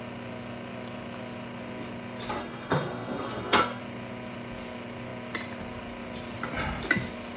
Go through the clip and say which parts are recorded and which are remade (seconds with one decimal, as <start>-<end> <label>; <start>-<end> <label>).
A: 0.0-2.4 recorded; 2.4-3.8 remade; 3.8-7.4 recorded